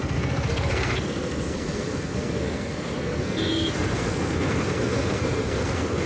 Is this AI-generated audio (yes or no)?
yes